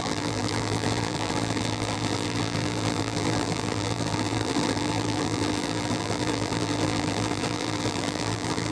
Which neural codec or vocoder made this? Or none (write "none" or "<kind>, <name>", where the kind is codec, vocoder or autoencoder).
vocoder, BigVGAN v2